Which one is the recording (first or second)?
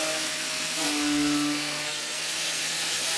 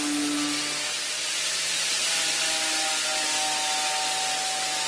second